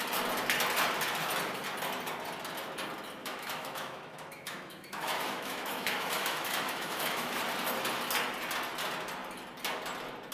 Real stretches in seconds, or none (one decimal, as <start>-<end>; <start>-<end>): 0.0-3.2; 7.4-10.3